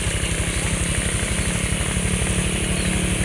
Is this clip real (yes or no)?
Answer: yes